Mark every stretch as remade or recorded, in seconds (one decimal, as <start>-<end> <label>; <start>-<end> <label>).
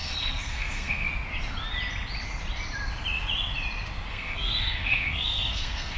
0.0-1.1 remade; 1.1-4.1 recorded; 4.1-6.0 remade